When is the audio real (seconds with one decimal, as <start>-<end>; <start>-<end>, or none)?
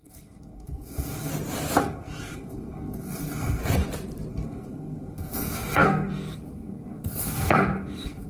1.3-1.8; 3.6-4.3